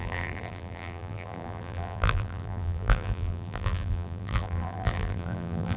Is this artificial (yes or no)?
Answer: yes